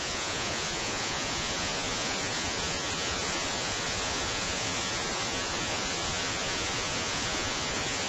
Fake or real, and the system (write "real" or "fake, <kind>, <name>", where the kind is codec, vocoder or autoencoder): fake, vocoder, Vocos